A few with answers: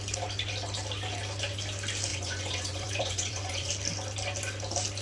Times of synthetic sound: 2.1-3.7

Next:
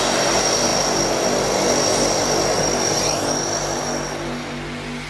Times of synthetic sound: none

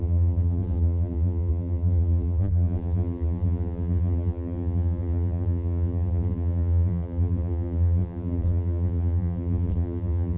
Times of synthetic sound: 0.0-10.4

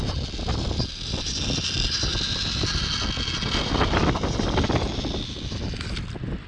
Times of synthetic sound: none

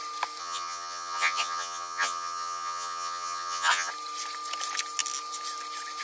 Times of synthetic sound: 0.4-3.9

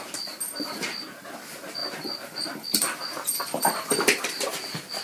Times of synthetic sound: 1.8-4.2

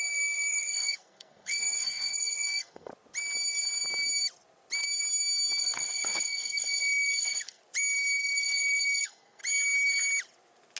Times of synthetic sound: 0.0-2.9; 5.6-7.6; 8.2-9.4

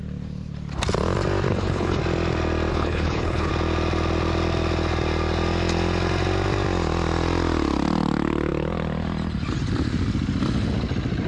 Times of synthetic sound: 1.5-2.0; 2.7-3.5